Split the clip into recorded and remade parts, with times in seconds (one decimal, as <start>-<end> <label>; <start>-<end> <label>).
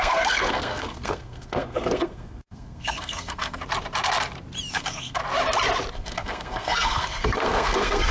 0.0-3.6 remade; 3.6-4.7 recorded; 4.7-5.2 remade; 5.2-5.9 recorded; 5.9-8.1 remade